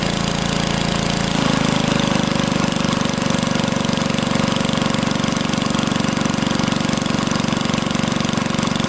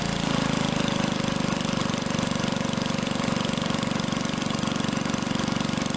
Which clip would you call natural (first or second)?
first